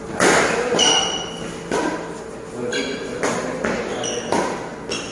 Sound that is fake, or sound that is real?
real